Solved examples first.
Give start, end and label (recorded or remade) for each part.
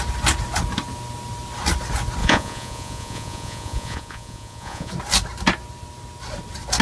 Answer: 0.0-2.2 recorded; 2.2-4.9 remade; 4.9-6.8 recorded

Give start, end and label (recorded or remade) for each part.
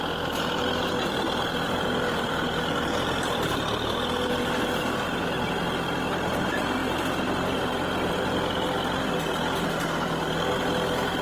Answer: 0.0-11.2 recorded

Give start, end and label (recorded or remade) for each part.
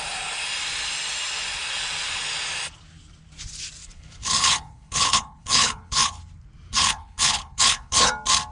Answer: 0.0-3.8 recorded; 3.8-6.2 remade; 6.2-6.7 recorded; 6.7-8.1 remade; 8.1-8.5 recorded